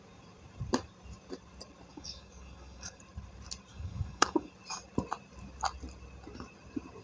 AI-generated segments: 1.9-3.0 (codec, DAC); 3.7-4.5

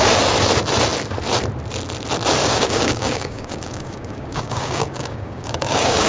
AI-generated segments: 2.4-6.1 (codec, DAC)

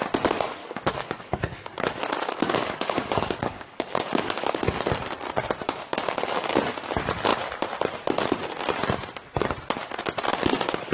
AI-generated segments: 0.6-4.8 (codec, DAC); 5.9-6.6

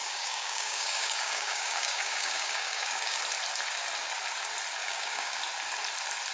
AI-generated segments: 0.0-3.2 (codec, DAC); 4.8-5.4

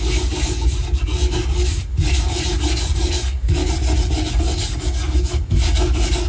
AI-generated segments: 0.0-3.6 (codec, DAC); 4.3-6.3